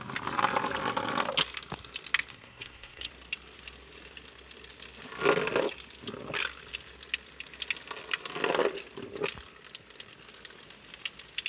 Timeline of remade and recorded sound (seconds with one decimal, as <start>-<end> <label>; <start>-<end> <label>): 0.0-2.3 recorded; 2.3-3.1 remade; 3.1-11.5 recorded